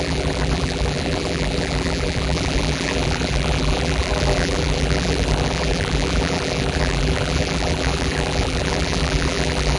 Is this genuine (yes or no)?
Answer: no